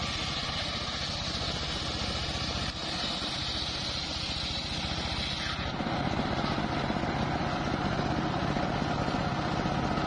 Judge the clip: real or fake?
real